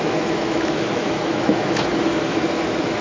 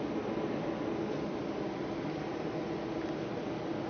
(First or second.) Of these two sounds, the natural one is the second